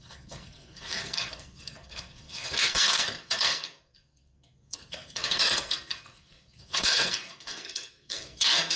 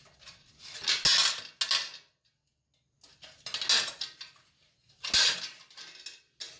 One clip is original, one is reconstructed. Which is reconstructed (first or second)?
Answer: first